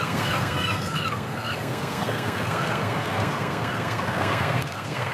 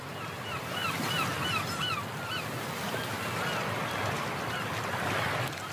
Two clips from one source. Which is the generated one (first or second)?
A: first